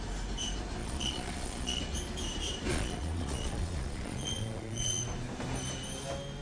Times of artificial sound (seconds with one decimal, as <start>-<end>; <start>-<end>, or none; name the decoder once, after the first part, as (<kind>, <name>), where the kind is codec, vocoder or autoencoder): 0.8-1.8 (vocoder, Vocos); 2.7-5.0